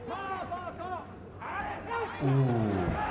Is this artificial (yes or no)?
no